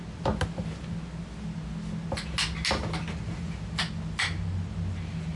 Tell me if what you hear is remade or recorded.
recorded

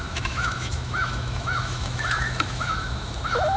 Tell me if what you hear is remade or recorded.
remade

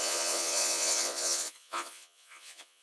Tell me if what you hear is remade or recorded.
remade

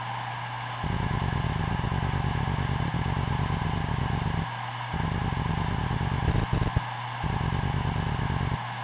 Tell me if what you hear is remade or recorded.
recorded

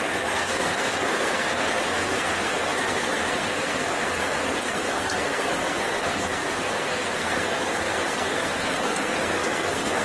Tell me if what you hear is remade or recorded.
remade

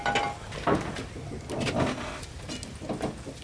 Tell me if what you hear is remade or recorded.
recorded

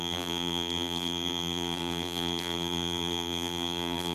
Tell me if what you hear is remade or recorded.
remade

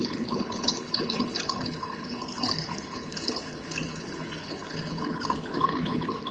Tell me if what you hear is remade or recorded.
remade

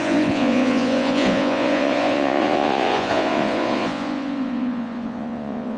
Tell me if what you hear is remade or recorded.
remade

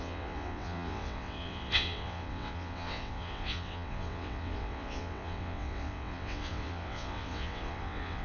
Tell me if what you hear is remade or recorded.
remade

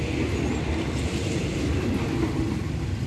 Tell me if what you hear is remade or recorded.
recorded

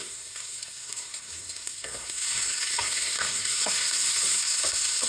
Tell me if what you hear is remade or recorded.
remade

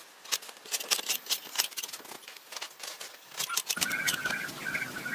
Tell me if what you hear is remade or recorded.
recorded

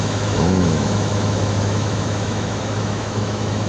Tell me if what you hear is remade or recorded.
remade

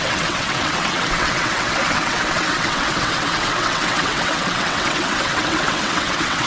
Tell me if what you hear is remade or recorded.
remade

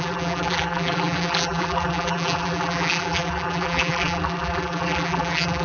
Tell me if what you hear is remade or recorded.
remade